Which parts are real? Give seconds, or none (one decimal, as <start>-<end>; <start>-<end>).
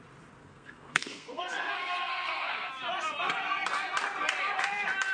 0.0-0.4; 2.7-5.1